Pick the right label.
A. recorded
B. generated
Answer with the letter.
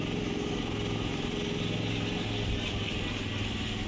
A